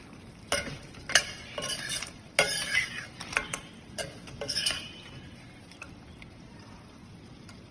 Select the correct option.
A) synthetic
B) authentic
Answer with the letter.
A